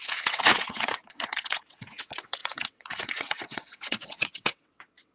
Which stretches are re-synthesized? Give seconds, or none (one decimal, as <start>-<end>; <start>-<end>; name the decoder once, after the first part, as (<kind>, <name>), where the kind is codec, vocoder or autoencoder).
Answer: 0.0-5.1 (vocoder, WaveNeXt)